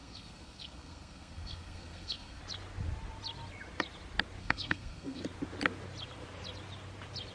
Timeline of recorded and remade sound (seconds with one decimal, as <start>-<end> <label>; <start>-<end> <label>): 0.0-2.4 remade; 2.4-4.4 recorded; 4.4-5.2 remade; 5.2-7.3 recorded